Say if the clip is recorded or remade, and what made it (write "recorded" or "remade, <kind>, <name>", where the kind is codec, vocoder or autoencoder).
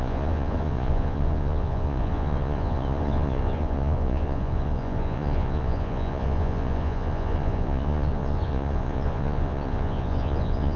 remade, vocoder, Vocos